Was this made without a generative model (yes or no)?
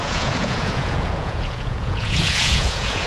no